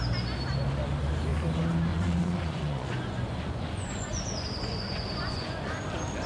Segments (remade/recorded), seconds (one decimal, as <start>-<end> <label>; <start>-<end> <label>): 0.0-1.9 recorded; 1.9-5.7 remade; 5.7-6.3 recorded